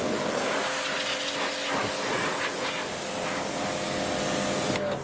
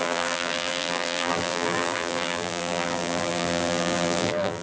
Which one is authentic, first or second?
first